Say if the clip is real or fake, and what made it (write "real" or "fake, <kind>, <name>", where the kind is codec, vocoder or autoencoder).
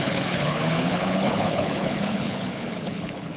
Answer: fake, codec, HILCodec